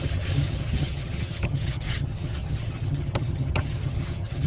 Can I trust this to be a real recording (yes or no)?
no